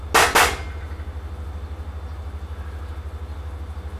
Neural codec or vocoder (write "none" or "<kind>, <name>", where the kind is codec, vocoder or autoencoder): none